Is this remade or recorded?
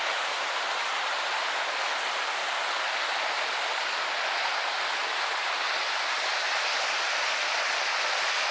recorded